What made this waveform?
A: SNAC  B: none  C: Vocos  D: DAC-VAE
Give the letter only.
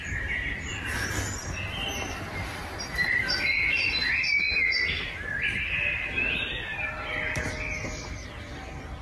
B